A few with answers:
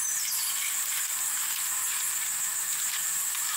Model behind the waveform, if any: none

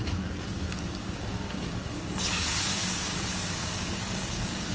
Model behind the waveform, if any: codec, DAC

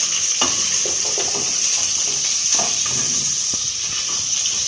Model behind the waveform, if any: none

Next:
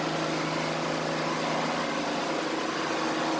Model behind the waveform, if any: none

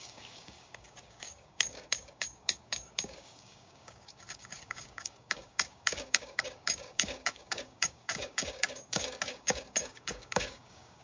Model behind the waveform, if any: codec, DAC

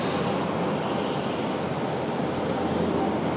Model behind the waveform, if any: none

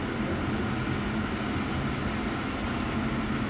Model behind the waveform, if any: none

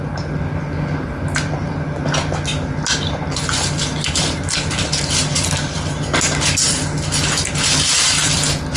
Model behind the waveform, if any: none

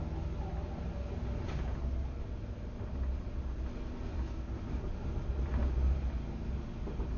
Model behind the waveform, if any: none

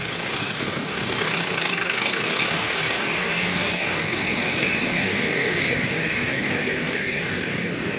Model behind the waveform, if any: codec, DAC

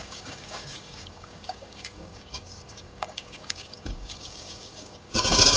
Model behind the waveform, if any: codec, DAC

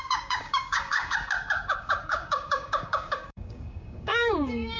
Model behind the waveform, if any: codec, DAC